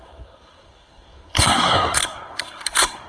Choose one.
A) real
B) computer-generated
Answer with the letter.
B